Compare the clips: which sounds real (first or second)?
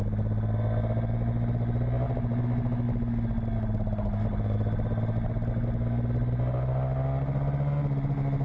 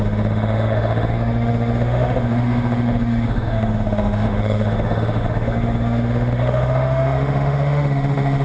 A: first